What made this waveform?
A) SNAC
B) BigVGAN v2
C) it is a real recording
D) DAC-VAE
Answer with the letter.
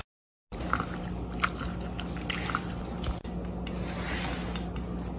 C